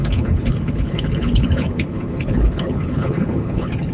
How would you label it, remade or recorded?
remade